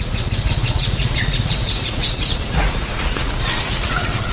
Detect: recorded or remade remade